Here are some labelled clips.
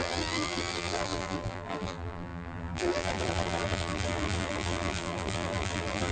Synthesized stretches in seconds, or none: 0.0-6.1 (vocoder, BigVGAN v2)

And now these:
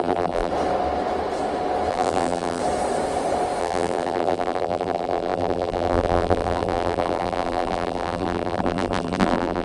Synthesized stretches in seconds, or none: 0.0-0.5 (vocoder, BigVGAN v2); 1.9-2.6; 3.6-9.6

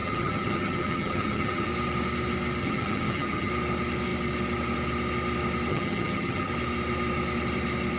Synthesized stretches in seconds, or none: 0.0-1.7 (vocoder, HiFi-GAN); 2.6-3.5; 5.7-6.5

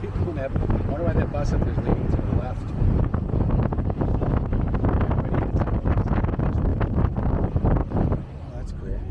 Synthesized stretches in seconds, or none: 1.9-3.5 (vocoder, BigVGAN v2); 6.7-7.2; 7.8-8.4

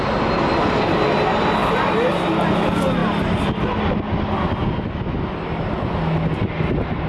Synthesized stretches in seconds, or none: 3.0-3.9 (vocoder, BigVGAN v2)

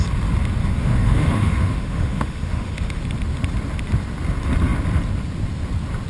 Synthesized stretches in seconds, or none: 0.6-3.0 (autoencoder, DAC-VAE)

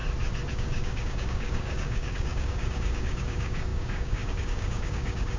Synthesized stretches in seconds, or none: 0.5-5.4 (codec, DAC)

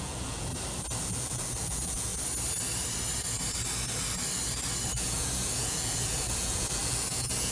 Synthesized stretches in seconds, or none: 0.0-0.5 (vocoder, Vocos); 1.1-2.1; 4.9-7.5